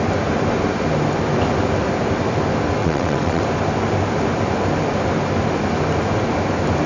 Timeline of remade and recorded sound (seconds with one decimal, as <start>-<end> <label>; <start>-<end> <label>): 0.0-2.8 recorded; 2.8-3.4 remade; 3.4-6.9 recorded

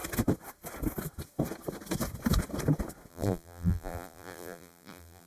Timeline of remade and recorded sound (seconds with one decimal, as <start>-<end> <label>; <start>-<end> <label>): 0.0-3.1 recorded; 3.1-5.3 remade

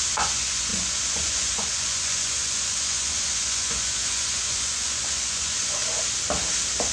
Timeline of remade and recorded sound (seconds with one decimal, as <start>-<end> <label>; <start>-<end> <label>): 0.0-5.8 remade; 5.8-6.9 recorded

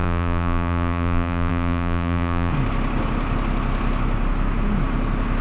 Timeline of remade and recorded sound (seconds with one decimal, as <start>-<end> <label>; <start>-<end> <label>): 0.0-2.5 remade; 2.5-5.4 recorded

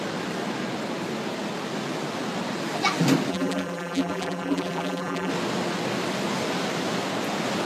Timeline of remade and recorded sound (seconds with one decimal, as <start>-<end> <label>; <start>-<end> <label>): 0.0-3.3 recorded; 3.3-5.3 remade; 5.3-7.7 recorded

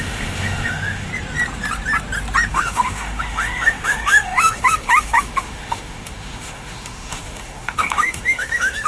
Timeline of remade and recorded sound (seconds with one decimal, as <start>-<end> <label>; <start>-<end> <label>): 0.0-1.1 remade; 1.1-2.5 recorded; 2.5-8.9 remade

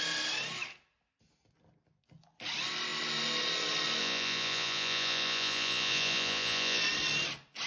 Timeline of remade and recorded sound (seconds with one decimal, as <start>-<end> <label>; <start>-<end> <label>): 0.0-4.0 recorded; 4.0-6.8 remade; 6.8-7.7 recorded